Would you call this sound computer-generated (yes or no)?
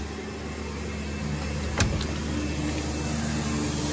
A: no